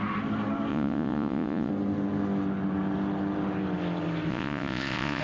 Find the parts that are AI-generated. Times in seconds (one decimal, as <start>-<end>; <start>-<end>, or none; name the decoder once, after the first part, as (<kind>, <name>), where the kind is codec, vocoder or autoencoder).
0.7-1.7 (vocoder, Vocos); 4.3-5.2